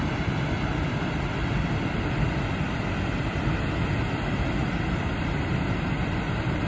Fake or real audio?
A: real